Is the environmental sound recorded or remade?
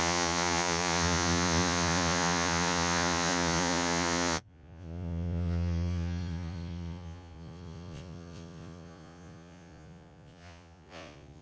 remade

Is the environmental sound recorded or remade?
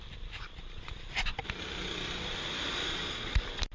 recorded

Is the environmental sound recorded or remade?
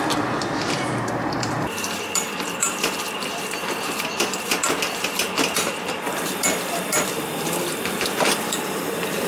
remade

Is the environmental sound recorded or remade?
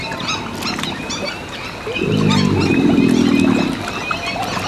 recorded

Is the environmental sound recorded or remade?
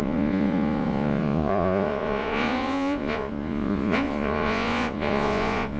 remade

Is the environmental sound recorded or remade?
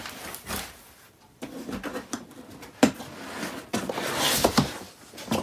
recorded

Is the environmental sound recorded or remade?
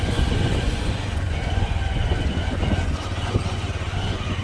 remade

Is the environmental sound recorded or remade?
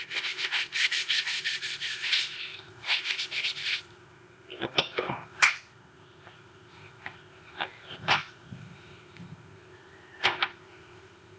remade